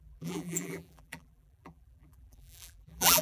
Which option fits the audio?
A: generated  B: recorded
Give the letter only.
A